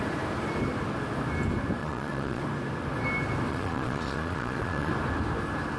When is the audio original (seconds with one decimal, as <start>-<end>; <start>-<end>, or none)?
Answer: 0.0-1.8; 2.4-3.5; 4.9-5.8